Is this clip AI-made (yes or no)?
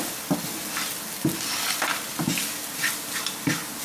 no